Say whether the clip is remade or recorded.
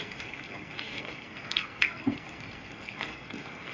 remade